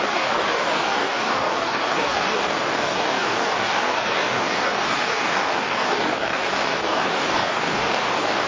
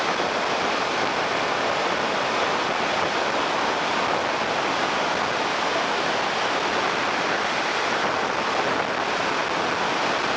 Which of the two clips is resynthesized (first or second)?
first